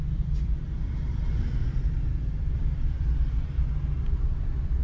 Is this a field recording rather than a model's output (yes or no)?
no